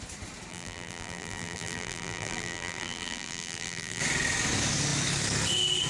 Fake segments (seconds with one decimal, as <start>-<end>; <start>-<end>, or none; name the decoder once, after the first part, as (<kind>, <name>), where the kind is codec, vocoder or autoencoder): 0.5-4.0 (vocoder, BigVGAN v2)